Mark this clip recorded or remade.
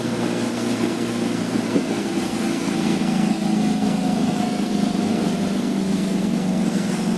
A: remade